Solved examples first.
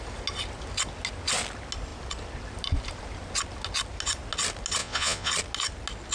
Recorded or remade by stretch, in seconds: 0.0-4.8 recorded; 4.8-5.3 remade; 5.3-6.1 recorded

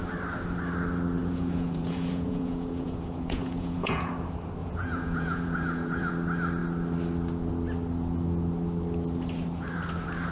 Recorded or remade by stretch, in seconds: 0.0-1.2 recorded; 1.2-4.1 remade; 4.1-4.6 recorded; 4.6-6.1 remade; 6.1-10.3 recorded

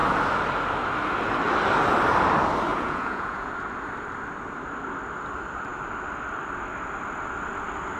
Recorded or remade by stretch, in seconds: 0.0-2.7 recorded; 2.7-3.5 remade; 3.5-8.0 recorded

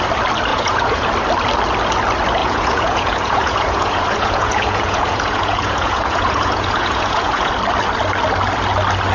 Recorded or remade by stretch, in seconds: 0.0-0.5 recorded; 0.5-1.1 remade; 1.1-2.4 recorded; 2.4-7.5 remade; 7.5-9.1 recorded